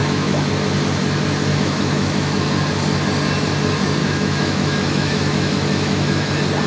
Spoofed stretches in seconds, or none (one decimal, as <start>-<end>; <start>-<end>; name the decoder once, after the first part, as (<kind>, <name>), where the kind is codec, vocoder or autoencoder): 0.0-0.5 (autoencoder, DAC-VAE); 1.5-2.4; 4.0-6.3